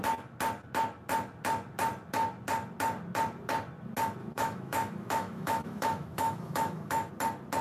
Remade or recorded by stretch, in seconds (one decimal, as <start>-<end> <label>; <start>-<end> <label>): 0.0-4.2 recorded; 4.2-7.1 remade; 7.1-7.6 recorded